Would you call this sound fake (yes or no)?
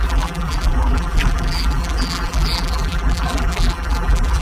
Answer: yes